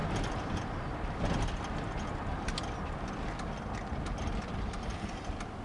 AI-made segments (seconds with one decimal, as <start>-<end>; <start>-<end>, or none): 0.0-1.7